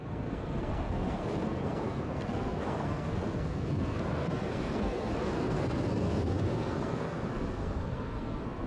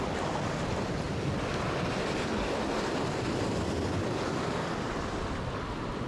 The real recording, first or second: second